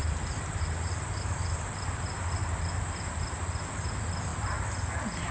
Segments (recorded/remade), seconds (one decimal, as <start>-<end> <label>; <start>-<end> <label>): 0.0-2.0 remade; 2.0-2.4 recorded; 2.4-3.4 remade; 3.4-5.3 recorded